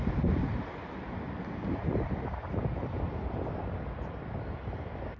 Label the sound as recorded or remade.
recorded